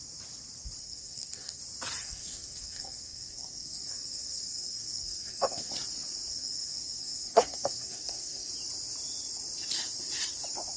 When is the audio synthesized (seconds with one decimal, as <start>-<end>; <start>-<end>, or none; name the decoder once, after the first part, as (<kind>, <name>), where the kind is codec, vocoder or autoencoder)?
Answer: 0.8-1.6 (codec, SNAC); 2.0-5.7; 6.3-8.5